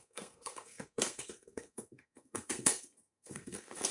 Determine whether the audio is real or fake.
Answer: fake